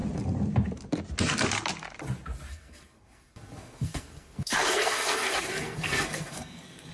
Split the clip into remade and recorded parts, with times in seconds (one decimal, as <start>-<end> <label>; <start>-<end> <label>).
0.0-2.5 recorded; 2.5-6.9 remade